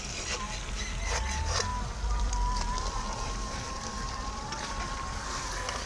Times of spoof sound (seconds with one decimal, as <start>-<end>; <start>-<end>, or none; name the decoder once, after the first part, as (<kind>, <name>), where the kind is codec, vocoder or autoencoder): 1.7-4.7 (vocoder, BigVGAN v2)